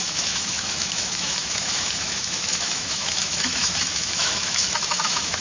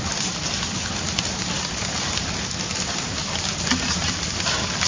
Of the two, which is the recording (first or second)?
second